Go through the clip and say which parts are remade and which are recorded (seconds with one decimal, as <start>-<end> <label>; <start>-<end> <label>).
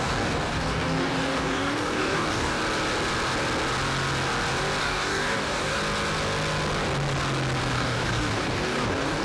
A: 0.0-2.6 remade; 2.6-4.8 recorded; 4.8-5.8 remade; 5.8-7.6 recorded; 7.6-9.2 remade